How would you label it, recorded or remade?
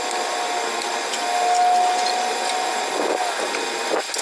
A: recorded